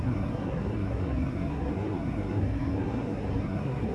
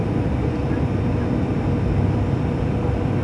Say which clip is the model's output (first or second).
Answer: first